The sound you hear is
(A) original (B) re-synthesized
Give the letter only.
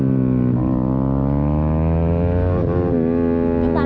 A